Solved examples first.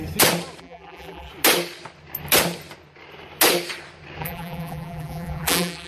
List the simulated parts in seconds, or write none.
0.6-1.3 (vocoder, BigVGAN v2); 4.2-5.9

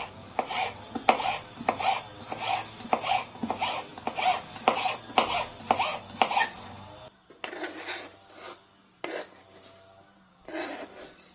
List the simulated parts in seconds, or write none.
3.9-5.0 (vocoder, BigVGAN v2)

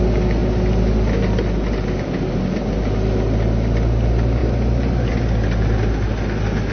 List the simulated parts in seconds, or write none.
4.4-5.1 (vocoder, BigVGAN v2)

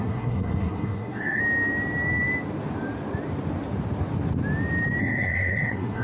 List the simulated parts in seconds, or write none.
0.0-1.4 (codec, SNAC); 5.0-6.0

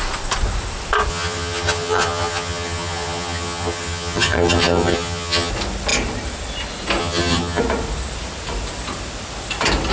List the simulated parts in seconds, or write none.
1.1-5.5 (vocoder, HiFi-GAN); 7.0-7.6